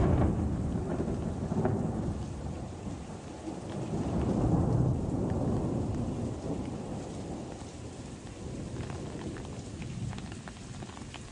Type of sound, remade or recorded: recorded